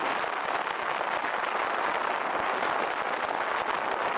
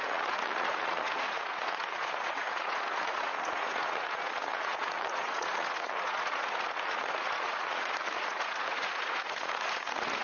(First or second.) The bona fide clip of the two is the first